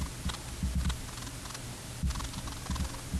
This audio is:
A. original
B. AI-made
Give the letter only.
A